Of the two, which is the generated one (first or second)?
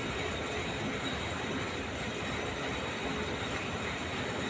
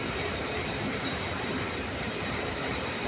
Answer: second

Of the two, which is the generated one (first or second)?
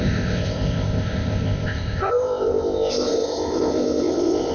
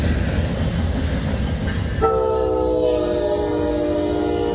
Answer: first